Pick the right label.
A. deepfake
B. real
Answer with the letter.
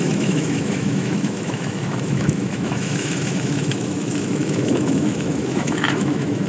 A